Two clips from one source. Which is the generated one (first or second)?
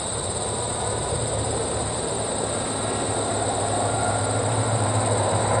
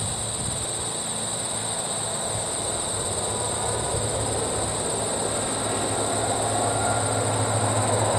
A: first